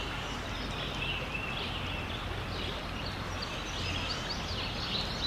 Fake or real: real